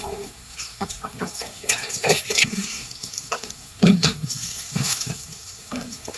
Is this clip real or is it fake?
fake